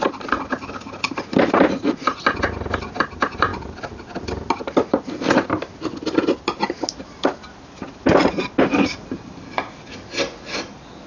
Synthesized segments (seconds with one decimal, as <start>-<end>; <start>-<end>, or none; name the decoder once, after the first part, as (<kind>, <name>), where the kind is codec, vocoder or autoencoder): none